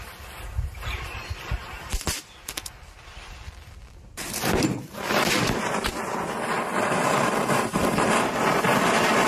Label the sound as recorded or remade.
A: remade